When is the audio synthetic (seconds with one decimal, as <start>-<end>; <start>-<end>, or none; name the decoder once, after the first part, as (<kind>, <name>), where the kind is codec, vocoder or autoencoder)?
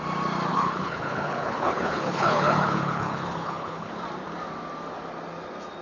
0.5-3.9 (codec, HILCodec)